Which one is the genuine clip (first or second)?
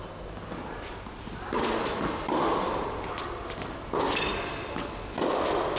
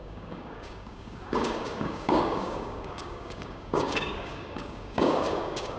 first